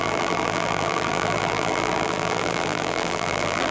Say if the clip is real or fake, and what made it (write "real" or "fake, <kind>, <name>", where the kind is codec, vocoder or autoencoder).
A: fake, vocoder, BigVGAN v2